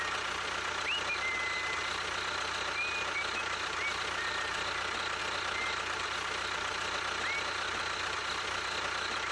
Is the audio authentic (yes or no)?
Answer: yes